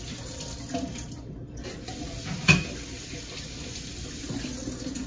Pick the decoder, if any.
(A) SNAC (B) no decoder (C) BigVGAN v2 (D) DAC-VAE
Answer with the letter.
B